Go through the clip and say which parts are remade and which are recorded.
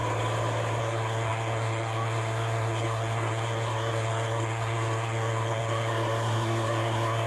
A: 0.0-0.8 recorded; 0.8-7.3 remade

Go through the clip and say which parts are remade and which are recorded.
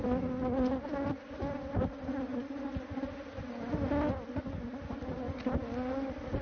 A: 0.0-6.4 recorded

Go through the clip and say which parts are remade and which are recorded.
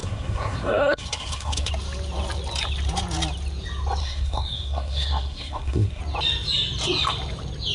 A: 0.0-1.7 remade; 1.7-4.0 recorded; 4.0-6.0 remade; 6.0-7.7 recorded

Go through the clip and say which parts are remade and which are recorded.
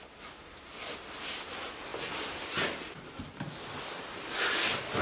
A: 0.0-5.0 recorded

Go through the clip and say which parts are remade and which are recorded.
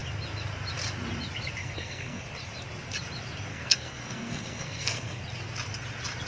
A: 0.0-1.6 recorded; 1.6-2.2 remade; 2.2-3.5 recorded; 3.5-5.2 remade; 5.2-6.3 recorded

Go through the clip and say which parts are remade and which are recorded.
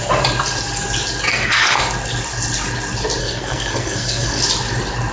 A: 0.0-1.3 recorded; 1.3-1.8 remade; 1.8-3.2 recorded; 3.2-4.4 remade; 4.4-5.1 recorded